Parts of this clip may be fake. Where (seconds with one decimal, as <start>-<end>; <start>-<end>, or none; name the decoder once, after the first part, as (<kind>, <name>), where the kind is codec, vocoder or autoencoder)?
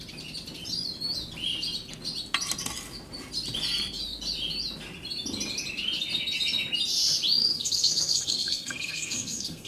7.4-9.7 (codec, SNAC)